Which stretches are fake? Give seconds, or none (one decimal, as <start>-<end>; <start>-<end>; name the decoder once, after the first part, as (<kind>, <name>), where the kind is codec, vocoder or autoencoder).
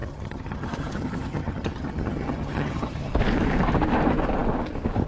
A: 0.0-3.1 (vocoder, HiFi-GAN)